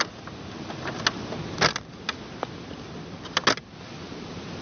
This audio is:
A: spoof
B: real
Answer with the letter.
B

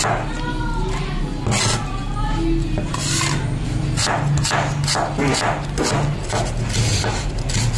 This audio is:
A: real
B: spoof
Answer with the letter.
A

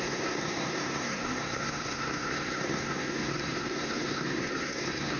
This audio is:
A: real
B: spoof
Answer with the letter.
B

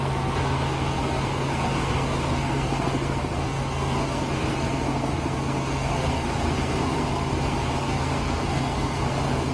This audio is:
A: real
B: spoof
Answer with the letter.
B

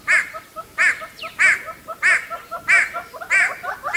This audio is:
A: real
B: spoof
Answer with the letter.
B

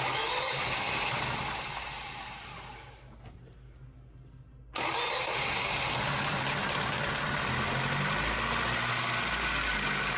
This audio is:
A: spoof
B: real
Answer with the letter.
B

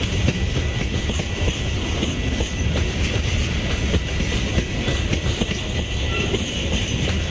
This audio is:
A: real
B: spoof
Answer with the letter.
B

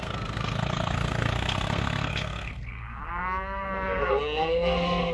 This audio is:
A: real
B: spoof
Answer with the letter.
B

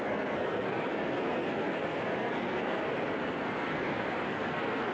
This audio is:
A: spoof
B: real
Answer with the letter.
A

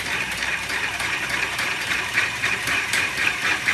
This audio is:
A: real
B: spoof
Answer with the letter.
B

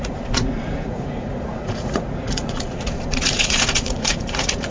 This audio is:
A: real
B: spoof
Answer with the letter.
B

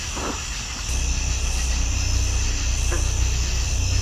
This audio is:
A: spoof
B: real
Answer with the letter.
B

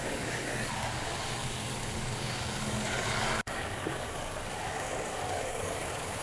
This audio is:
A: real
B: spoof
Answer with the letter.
B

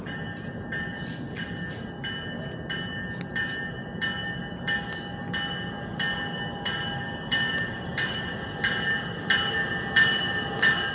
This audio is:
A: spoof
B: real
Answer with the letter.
B